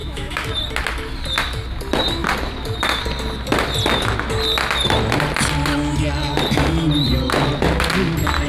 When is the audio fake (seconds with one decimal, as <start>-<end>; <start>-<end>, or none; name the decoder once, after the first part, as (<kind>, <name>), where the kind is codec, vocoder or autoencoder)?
0.0-0.5 (autoencoder, DAC-VAE)